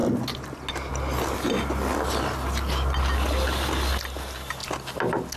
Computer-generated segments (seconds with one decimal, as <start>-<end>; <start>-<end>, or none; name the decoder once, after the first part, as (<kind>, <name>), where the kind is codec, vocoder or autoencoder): none